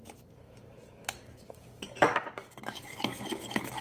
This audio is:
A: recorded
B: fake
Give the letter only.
B